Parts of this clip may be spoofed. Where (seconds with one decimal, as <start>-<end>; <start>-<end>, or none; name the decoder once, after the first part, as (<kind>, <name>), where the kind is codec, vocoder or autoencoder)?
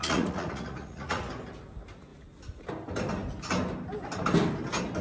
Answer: 0.0-1.3 (vocoder, Vocos)